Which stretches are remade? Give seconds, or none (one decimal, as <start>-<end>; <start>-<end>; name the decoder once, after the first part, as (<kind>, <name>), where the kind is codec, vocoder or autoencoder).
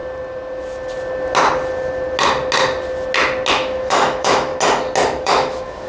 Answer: 3.5-4.5 (autoencoder, DAC-VAE); 5.2-5.9